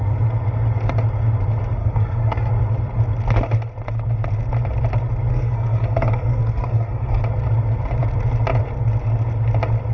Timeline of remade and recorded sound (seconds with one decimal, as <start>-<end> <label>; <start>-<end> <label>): 0.0-1.8 recorded; 1.8-2.5 remade; 2.5-5.3 recorded; 5.3-7.2 remade; 7.2-9.9 recorded